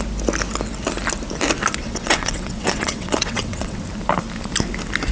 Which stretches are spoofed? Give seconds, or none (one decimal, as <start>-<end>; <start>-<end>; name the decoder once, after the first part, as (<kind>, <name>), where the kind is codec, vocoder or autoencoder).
1.8-3.8 (vocoder, WaveNeXt)